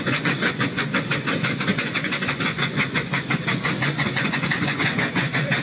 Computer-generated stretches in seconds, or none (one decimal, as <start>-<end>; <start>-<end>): 0.0-5.6